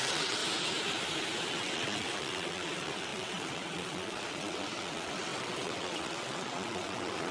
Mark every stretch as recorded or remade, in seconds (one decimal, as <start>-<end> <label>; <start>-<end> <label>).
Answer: 0.0-0.4 remade; 0.4-1.5 recorded; 1.5-7.3 remade